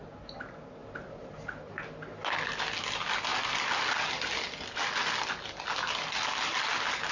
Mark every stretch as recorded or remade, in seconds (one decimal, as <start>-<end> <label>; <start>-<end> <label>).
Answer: 0.0-7.1 recorded